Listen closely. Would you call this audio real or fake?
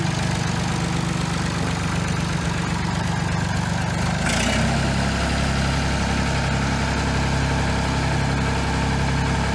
real